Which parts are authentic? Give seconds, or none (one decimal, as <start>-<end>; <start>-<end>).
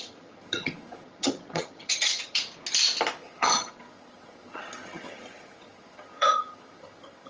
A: 2.4-3.2